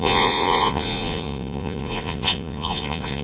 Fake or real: fake